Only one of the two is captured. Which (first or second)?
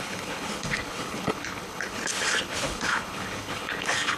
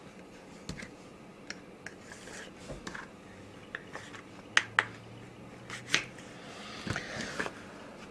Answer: second